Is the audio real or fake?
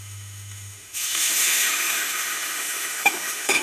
fake